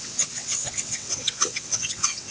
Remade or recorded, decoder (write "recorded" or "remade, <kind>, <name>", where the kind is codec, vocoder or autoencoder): remade, vocoder, WaveNeXt